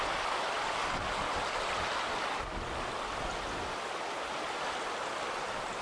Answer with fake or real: real